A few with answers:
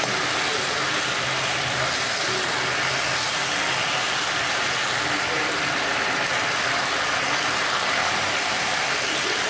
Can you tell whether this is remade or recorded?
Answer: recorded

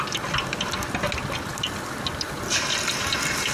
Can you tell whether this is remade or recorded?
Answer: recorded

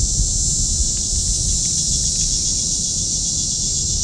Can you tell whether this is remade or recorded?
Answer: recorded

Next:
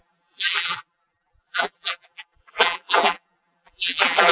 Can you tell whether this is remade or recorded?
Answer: remade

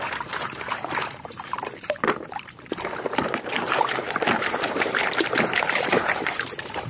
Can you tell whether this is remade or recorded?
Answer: remade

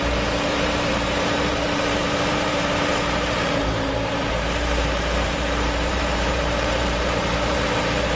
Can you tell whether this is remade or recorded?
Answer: remade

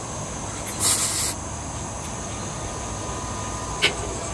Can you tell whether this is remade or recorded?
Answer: recorded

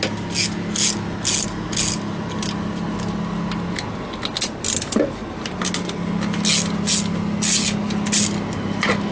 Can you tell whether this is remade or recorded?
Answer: recorded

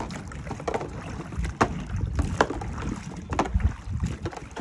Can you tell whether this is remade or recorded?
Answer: recorded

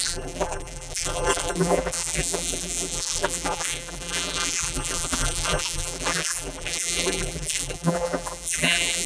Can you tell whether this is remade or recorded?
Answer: remade